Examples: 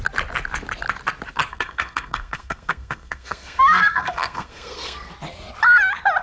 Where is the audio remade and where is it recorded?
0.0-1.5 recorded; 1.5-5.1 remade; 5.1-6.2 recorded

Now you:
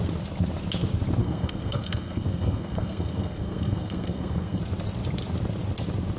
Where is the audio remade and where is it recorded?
0.0-1.2 recorded; 1.2-4.6 remade; 4.6-6.2 recorded